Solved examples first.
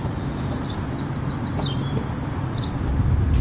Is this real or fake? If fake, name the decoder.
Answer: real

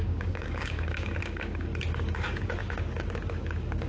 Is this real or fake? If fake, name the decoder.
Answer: fake, codec, DAC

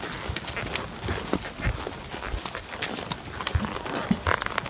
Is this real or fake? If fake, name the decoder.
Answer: real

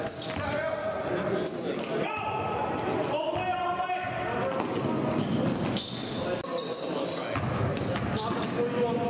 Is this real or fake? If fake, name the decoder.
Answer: real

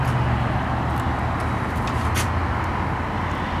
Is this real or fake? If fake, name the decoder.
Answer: real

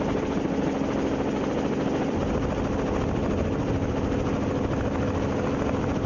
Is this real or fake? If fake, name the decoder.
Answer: real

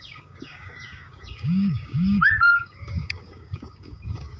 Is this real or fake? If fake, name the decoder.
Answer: fake, codec, DAC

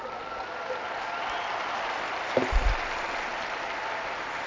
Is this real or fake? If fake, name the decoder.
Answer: real